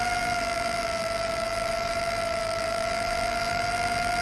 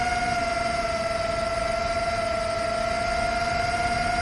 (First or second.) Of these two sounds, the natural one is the second